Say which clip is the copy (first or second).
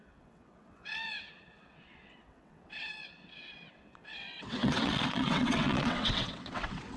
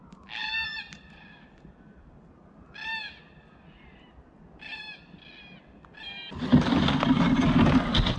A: first